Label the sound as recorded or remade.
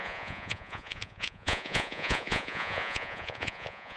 remade